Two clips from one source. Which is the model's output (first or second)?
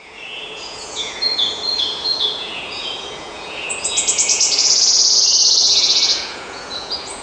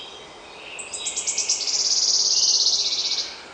first